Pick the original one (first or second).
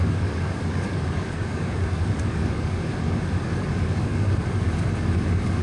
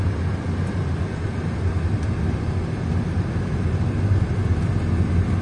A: second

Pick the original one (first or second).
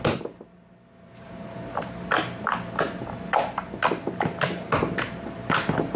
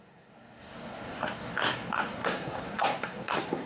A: first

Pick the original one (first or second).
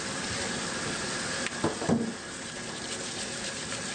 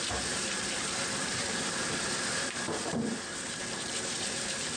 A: first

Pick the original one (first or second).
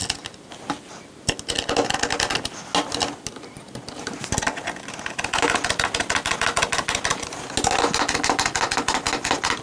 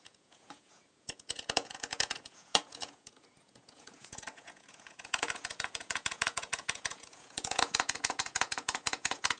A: first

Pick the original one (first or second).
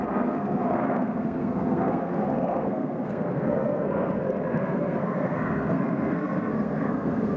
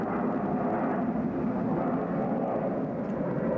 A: second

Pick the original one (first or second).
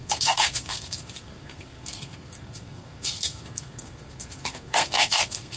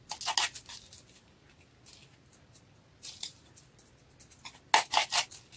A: second